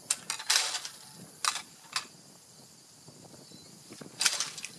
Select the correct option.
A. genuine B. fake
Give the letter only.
A